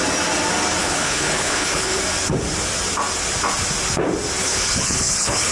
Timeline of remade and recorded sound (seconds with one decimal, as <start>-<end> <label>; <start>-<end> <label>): 0.0-0.8 recorded; 0.8-2.0 remade; 2.0-4.4 recorded; 4.4-5.5 remade